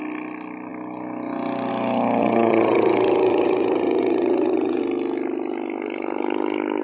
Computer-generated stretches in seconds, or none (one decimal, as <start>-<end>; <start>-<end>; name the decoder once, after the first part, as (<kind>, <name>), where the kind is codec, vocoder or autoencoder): 2.2-4.8 (vocoder, WaveNeXt)